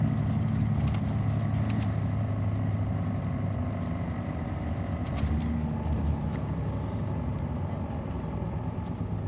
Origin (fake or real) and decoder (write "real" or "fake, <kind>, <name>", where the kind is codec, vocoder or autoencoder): real